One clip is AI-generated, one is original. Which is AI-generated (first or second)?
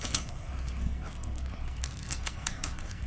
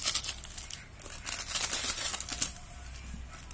first